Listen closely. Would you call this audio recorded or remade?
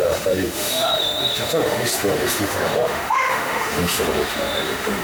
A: remade